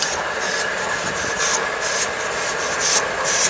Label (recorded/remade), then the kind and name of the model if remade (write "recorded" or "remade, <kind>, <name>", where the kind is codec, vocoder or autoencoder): recorded